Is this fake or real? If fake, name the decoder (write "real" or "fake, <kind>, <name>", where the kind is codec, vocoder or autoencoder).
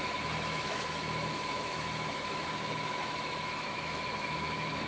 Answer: fake, autoencoder, DAC-VAE